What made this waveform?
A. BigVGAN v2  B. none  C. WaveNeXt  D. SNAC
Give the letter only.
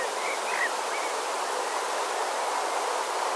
B